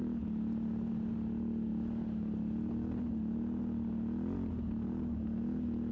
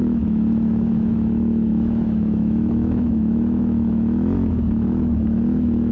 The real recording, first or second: first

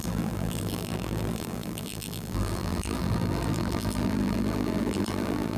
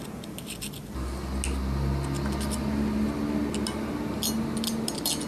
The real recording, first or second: second